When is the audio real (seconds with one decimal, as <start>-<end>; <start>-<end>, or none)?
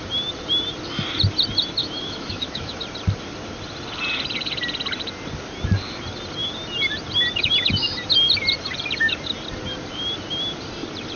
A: 0.0-1.8; 2.8-11.2